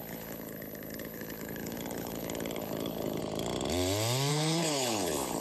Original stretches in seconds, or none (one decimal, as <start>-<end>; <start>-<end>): 3.2-4.3